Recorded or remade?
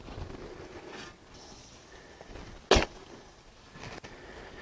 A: recorded